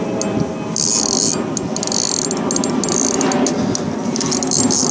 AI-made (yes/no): no